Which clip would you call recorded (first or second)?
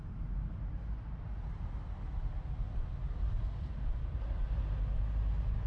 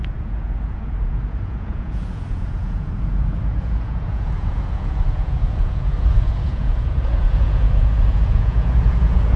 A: first